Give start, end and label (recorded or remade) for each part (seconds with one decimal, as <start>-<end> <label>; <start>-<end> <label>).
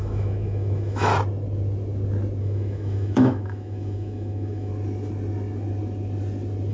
0.0-1.1 remade; 1.1-2.4 recorded; 2.4-4.7 remade; 4.7-6.7 recorded